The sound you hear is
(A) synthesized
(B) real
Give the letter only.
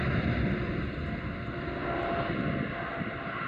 B